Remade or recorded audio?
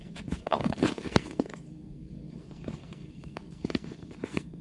remade